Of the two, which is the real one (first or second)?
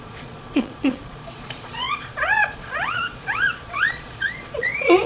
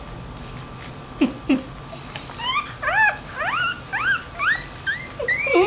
second